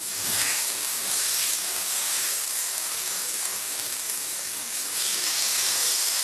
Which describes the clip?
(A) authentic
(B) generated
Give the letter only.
B